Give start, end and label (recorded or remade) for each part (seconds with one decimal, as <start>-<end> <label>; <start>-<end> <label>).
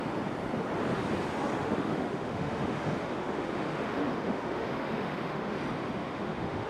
0.0-1.6 recorded; 1.6-5.6 remade; 5.6-6.0 recorded; 6.0-6.7 remade